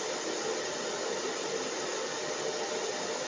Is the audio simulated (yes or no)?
no